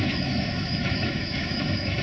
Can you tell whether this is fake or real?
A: fake